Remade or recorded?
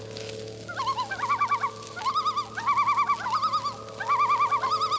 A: recorded